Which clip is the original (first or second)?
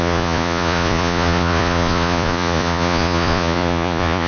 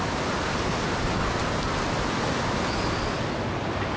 second